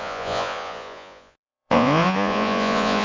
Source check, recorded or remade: remade